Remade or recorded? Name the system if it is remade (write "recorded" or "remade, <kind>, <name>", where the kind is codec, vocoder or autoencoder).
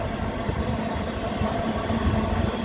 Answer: recorded